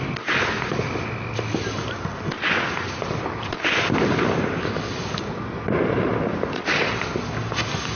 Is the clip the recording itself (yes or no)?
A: yes